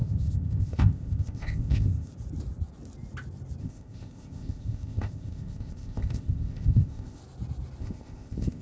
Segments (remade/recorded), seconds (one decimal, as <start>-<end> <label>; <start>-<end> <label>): 0.0-2.1 remade; 2.1-3.6 recorded; 3.6-7.2 remade; 7.2-7.8 recorded; 7.8-8.6 remade